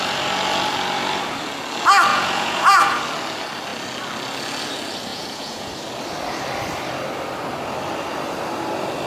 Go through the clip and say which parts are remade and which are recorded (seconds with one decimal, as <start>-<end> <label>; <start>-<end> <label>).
0.0-2.1 recorded; 2.1-3.0 remade; 3.0-5.1 recorded; 5.1-5.7 remade; 5.7-9.1 recorded